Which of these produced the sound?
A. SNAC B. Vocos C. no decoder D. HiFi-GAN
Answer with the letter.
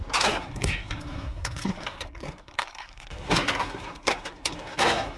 A